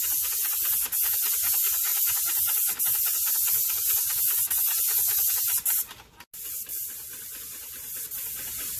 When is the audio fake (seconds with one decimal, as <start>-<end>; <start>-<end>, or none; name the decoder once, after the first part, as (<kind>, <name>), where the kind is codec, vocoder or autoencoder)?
none